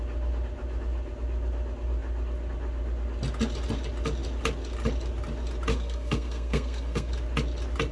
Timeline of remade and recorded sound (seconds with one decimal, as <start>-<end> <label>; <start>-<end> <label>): 0.0-5.7 recorded; 5.7-7.1 remade; 7.1-7.9 recorded